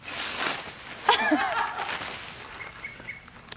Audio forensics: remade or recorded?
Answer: recorded